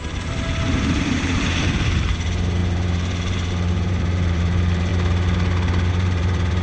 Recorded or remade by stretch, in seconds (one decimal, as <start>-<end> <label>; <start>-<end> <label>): 0.0-4.9 remade; 4.9-5.9 recorded; 5.9-6.6 remade